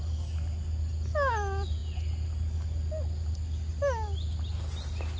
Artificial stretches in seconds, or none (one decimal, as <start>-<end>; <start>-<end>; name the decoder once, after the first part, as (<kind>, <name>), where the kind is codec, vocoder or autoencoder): none